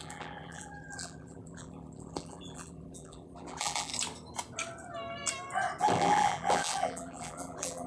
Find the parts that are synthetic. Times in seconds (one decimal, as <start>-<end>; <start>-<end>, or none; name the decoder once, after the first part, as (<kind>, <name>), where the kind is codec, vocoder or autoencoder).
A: 0.0-3.9 (vocoder, BigVGAN v2); 5.8-7.9